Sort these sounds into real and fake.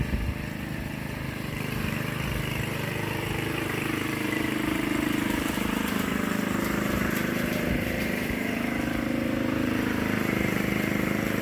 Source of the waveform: fake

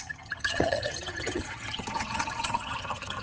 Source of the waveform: fake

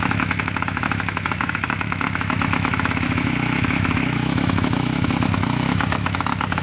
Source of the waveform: fake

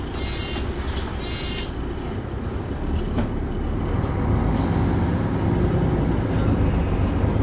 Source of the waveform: real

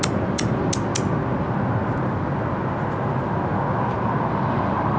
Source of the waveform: real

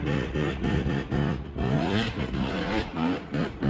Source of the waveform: fake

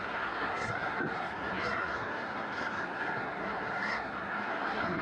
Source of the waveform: fake